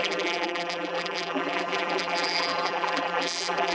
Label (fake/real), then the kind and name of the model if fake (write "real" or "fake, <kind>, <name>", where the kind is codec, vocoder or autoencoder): fake, vocoder, BigVGAN v2